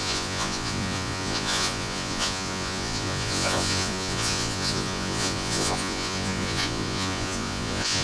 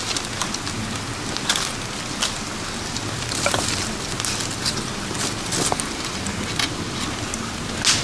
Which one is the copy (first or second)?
first